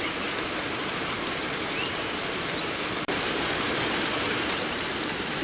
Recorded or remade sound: remade